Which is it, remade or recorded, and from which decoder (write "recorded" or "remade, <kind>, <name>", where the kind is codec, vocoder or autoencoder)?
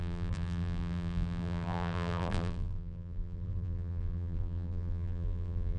remade, vocoder, BigVGAN v2